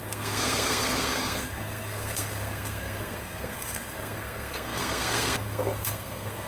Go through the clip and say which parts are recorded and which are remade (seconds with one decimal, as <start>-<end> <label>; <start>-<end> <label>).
0.0-6.5 remade